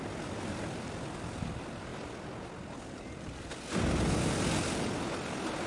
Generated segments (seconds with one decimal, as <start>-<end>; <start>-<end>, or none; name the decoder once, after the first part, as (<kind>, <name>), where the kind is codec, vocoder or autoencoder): none